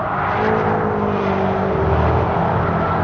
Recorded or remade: recorded